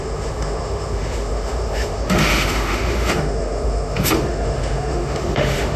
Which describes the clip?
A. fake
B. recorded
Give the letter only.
A